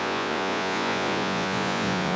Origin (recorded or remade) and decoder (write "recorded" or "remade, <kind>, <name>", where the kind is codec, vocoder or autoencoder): remade, vocoder, Vocos